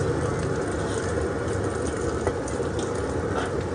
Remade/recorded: recorded